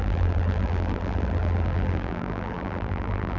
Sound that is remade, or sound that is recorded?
remade